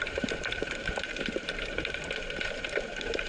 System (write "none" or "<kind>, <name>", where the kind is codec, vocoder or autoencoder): vocoder, BigVGAN v2